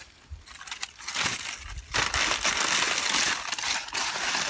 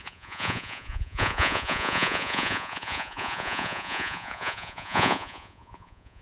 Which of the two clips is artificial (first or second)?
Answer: second